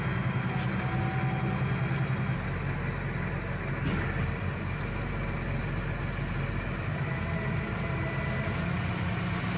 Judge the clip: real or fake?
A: real